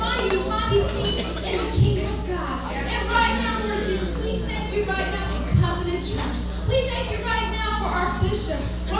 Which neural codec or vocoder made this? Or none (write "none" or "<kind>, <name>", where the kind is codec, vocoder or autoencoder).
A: none